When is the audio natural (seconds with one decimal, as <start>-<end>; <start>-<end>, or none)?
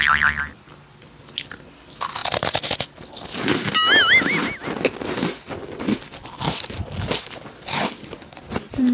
0.0-8.9